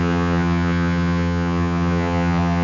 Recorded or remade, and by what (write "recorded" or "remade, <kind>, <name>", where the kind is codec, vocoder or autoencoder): remade, vocoder, HiFi-GAN